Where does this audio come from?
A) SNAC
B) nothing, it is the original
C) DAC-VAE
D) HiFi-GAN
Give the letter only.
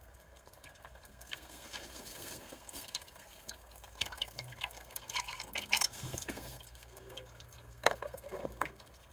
A